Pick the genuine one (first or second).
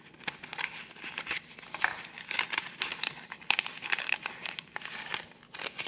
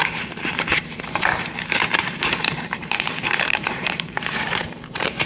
first